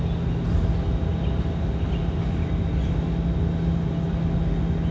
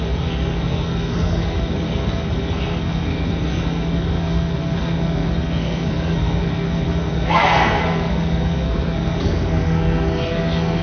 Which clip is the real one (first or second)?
first